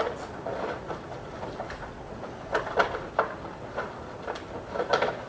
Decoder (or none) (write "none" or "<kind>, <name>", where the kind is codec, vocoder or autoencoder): none